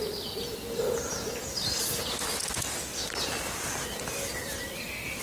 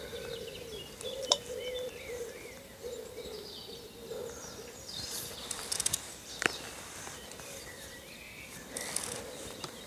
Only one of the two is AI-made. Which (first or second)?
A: second